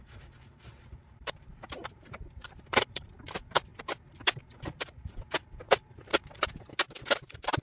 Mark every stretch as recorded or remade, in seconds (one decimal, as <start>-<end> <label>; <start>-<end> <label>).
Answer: 0.0-3.7 remade; 3.7-4.4 recorded; 4.4-6.1 remade; 6.1-7.1 recorded; 7.1-7.6 remade